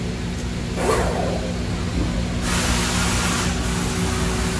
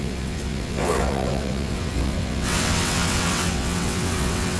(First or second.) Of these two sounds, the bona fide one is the first